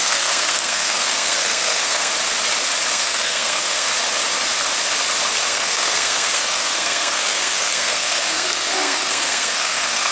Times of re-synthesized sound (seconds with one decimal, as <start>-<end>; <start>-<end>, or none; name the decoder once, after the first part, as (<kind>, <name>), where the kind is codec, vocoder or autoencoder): 0.0-2.1 (codec, SNAC); 2.9-3.9; 5.4-10.1